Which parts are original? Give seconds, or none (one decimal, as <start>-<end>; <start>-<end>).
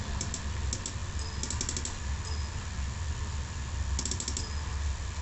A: 0.0-5.2